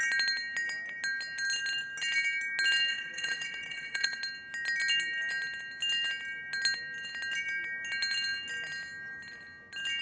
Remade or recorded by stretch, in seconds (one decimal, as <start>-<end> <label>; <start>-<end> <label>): 0.0-2.9 recorded; 2.9-4.2 remade; 4.2-10.0 recorded